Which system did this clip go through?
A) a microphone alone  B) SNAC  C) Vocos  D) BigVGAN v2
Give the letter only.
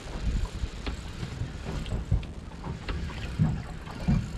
A